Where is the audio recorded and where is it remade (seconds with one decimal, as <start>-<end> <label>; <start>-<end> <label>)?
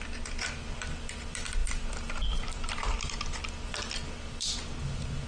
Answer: 0.0-5.3 recorded